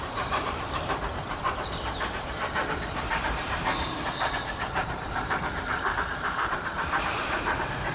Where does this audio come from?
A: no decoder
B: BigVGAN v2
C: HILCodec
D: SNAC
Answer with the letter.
B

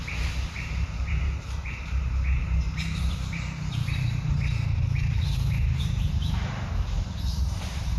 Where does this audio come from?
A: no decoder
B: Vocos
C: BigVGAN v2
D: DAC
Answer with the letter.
C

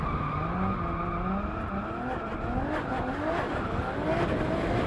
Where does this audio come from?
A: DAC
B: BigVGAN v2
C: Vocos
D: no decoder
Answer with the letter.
D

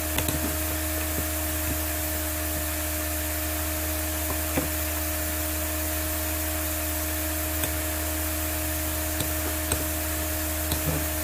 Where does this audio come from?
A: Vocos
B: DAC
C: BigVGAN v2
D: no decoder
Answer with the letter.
D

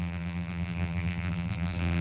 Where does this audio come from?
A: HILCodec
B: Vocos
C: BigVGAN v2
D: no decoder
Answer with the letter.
C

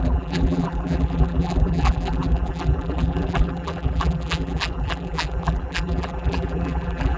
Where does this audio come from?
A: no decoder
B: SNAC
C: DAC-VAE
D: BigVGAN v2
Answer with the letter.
D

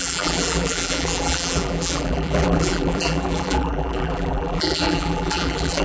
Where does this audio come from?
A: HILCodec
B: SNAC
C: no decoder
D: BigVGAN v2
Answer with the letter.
D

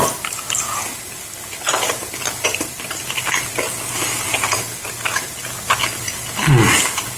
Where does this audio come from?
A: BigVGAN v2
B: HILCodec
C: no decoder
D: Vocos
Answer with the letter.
C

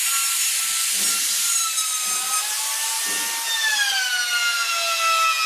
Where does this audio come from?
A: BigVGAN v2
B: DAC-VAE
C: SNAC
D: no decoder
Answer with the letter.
D